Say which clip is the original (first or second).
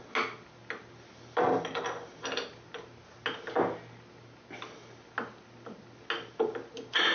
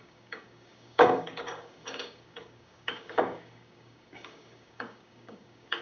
first